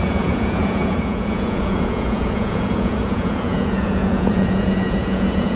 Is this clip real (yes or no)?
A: no